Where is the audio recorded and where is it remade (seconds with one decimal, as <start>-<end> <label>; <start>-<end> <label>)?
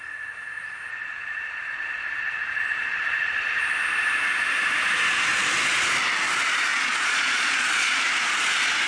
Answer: 0.0-0.9 recorded; 0.9-3.6 remade; 3.6-6.7 recorded; 6.7-8.0 remade; 8.0-8.9 recorded